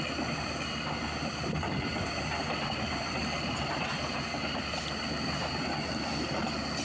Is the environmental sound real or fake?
real